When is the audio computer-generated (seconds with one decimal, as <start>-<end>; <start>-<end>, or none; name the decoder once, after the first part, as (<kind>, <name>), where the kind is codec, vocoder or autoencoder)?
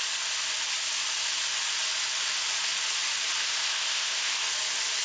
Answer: 3.4-4.4 (codec, ZipCodec)